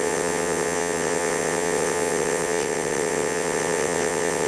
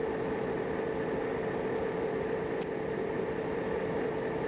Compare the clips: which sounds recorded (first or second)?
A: second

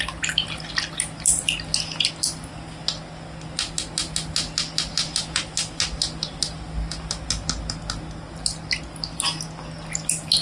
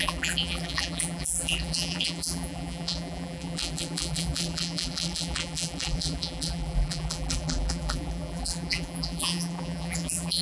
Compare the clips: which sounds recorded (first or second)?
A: first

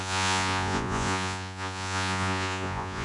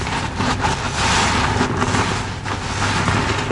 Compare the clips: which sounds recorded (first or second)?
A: second